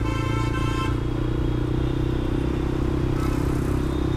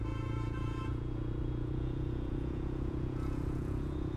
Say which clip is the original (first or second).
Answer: first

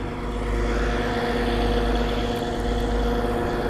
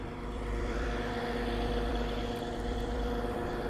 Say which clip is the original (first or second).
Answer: first